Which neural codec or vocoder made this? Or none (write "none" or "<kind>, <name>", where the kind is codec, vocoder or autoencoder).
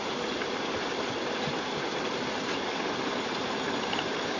vocoder, BigVGAN v2